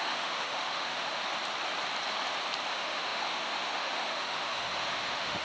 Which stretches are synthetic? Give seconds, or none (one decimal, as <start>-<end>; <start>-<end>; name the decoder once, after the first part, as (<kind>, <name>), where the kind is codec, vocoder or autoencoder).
0.0-1.2 (autoencoder, DAC-VAE); 2.7-5.4